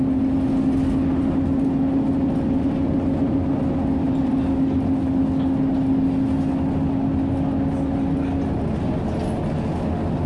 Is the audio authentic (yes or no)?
yes